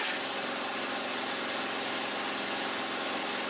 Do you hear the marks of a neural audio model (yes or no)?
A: no